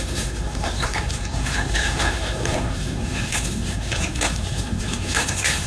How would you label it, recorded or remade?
remade